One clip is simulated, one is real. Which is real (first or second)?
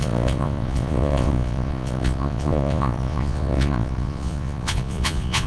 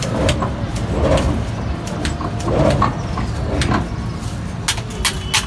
second